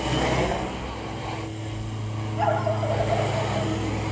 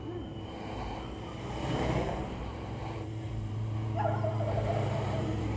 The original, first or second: first